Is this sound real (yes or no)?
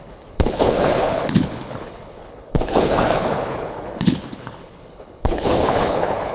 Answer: no